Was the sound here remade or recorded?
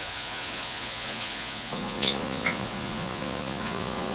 remade